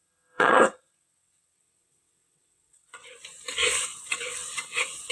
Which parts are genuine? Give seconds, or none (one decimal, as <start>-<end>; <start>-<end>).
3.1-3.9